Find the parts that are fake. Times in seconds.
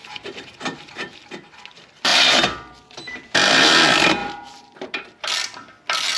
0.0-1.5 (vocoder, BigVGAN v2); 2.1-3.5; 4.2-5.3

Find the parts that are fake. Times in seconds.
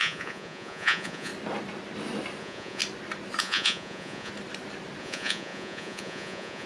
0.0-1.3 (vocoder, Vocos); 2.4-2.8; 3.4-4.3; 5.0-6.7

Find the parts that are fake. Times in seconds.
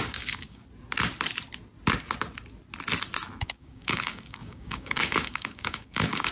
0.0-0.6 (codec, DAC); 3.4-6.3